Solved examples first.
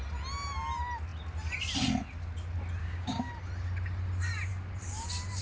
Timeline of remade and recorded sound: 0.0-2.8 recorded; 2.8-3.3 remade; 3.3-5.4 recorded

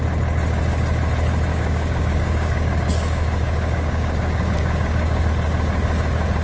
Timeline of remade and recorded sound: 0.0-1.5 recorded; 1.5-5.3 remade; 5.3-6.4 recorded